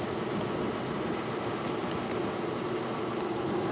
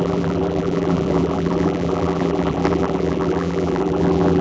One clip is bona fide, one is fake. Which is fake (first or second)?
second